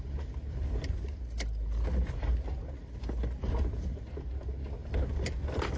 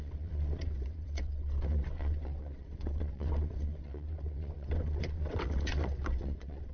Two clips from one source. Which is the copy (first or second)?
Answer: second